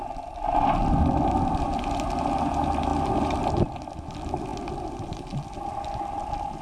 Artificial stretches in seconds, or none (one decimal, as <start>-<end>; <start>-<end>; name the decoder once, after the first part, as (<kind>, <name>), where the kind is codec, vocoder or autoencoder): none